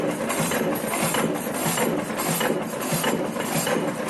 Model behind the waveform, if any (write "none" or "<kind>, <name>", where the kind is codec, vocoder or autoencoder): none